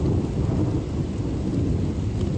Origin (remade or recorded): recorded